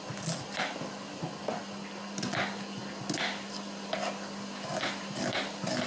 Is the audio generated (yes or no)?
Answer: no